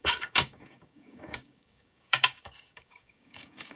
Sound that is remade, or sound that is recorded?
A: remade